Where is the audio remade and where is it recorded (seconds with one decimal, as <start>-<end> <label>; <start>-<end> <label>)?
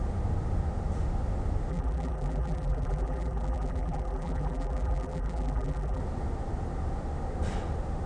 0.0-1.7 recorded; 1.7-6.0 remade; 6.0-8.1 recorded